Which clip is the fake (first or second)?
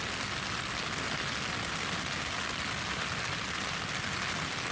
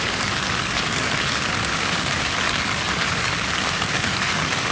second